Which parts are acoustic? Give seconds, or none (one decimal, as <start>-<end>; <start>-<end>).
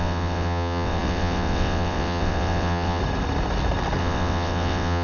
3.0-4.0